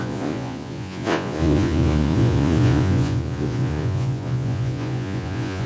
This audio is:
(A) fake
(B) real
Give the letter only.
A